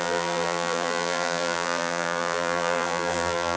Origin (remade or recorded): remade